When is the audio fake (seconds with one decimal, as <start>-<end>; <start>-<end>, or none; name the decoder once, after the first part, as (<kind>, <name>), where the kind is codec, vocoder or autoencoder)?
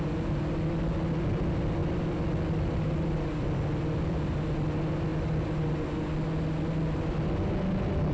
none